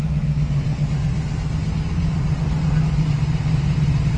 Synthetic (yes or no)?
no